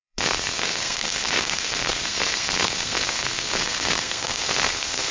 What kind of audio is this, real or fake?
fake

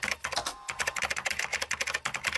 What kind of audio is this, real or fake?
real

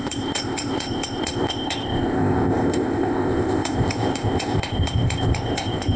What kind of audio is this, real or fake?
fake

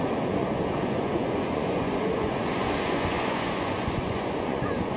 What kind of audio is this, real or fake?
fake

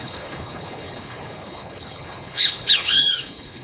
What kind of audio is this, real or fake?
fake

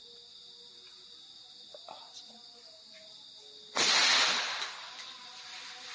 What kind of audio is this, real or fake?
real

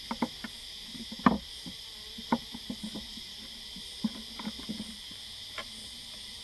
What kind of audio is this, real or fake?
real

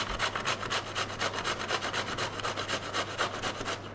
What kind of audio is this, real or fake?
real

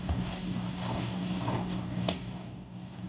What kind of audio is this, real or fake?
fake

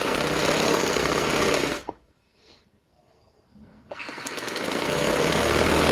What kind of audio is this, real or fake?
fake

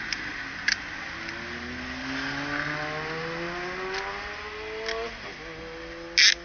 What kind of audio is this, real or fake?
real